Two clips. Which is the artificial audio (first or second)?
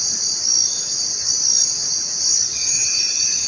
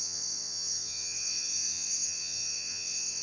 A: second